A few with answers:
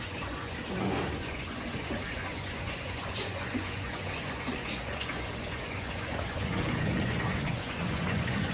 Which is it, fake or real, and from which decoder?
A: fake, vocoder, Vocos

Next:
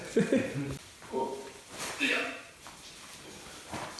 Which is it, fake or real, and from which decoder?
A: fake, vocoder, BigVGAN v2